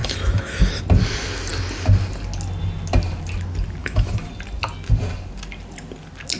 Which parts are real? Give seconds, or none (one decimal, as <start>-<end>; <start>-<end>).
0.8-3.8; 4.3-6.4